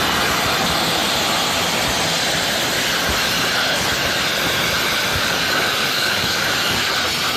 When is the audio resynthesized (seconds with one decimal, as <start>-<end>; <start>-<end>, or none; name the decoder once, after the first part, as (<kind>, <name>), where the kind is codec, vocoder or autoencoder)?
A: 5.1-6.9 (codec, DAC)